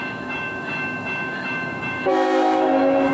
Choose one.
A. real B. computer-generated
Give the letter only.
B